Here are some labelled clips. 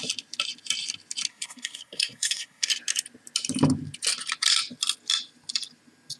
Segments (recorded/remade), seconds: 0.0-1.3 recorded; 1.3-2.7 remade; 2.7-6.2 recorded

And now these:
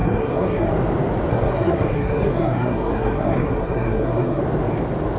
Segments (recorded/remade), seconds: 0.0-0.7 remade; 0.7-1.3 recorded; 1.3-4.4 remade; 4.4-5.2 recorded

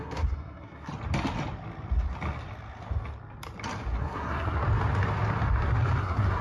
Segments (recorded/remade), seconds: 0.0-0.9 remade; 0.9-4.0 recorded; 4.0-4.6 remade; 4.6-6.0 recorded; 6.0-6.4 remade

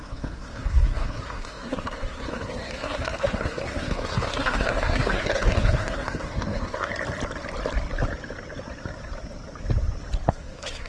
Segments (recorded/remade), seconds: 0.0-6.9 remade; 6.9-10.3 recorded; 10.3-10.9 remade